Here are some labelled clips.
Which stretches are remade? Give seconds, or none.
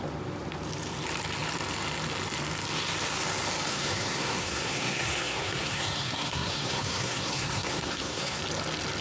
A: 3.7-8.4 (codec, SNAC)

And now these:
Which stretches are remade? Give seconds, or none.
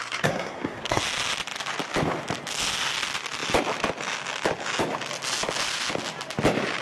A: 0.0-1.0 (codec, SNAC)